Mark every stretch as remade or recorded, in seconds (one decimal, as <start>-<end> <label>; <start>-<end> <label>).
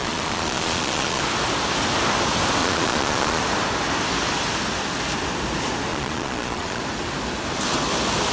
0.0-1.2 remade; 1.2-2.6 recorded; 2.6-3.4 remade; 3.4-5.9 recorded; 5.9-6.8 remade; 6.8-8.3 recorded